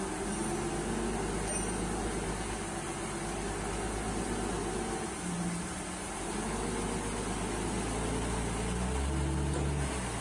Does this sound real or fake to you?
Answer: real